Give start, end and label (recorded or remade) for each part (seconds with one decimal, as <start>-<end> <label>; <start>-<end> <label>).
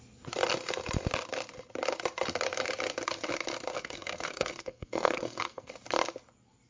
0.0-3.7 recorded; 3.7-5.7 remade; 5.7-6.7 recorded